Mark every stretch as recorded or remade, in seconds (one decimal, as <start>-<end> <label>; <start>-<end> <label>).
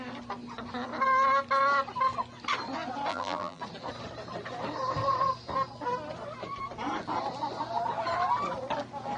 0.0-3.1 recorded; 3.1-3.6 remade; 3.6-9.2 recorded